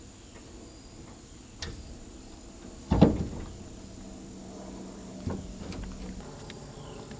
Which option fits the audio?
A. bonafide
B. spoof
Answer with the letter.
A